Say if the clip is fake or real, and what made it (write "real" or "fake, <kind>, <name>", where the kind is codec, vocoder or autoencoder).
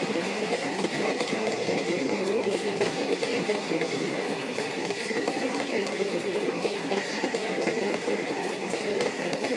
fake, codec, SNAC